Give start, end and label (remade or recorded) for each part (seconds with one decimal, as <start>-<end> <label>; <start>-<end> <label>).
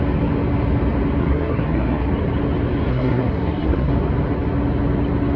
0.0-1.2 recorded; 1.2-2.1 remade; 2.1-2.9 recorded; 2.9-3.9 remade; 3.9-5.4 recorded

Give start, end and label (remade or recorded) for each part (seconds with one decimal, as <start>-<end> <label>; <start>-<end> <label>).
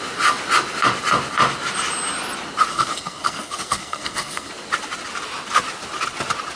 0.0-2.7 recorded; 2.7-4.5 remade; 4.5-6.6 recorded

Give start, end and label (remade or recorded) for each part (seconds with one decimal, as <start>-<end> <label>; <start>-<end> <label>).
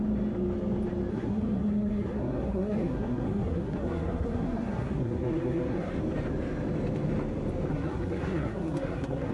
0.0-1.1 recorded; 1.1-5.9 remade; 5.9-7.7 recorded; 7.7-9.3 remade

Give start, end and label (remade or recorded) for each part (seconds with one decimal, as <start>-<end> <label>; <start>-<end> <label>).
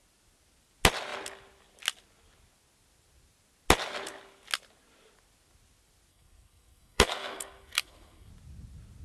0.0-6.1 recorded; 6.1-8.3 remade; 8.3-9.0 recorded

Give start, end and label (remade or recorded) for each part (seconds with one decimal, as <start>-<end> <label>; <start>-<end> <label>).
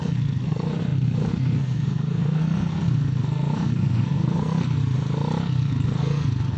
0.0-4.8 remade; 4.8-5.4 recorded; 5.4-6.6 remade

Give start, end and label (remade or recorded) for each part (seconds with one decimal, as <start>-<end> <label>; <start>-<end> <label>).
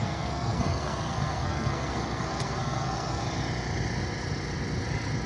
0.0-3.2 remade; 3.2-5.3 recorded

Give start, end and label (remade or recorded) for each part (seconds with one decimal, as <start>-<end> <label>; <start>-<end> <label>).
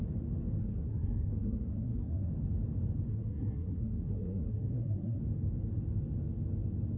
0.0-0.6 recorded; 0.6-2.3 remade; 2.3-3.1 recorded; 3.1-5.2 remade; 5.2-7.0 recorded